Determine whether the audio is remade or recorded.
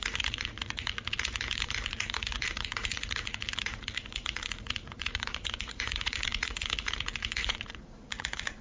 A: remade